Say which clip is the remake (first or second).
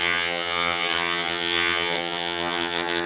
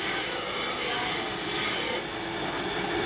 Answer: first